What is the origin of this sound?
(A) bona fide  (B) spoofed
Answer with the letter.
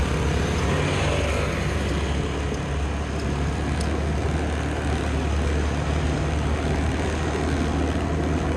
A